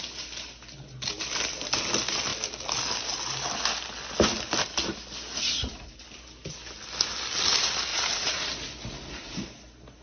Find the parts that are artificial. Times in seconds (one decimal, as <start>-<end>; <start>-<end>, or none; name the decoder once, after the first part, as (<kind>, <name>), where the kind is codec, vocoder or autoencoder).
7.9-8.5 (vocoder, Vocos)